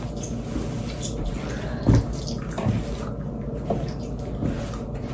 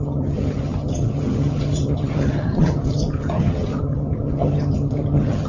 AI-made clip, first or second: second